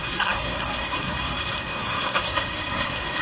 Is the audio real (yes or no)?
no